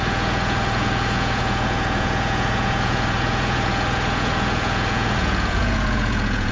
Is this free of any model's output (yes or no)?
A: no